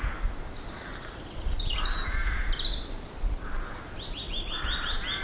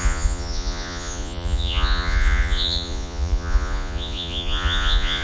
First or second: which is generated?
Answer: second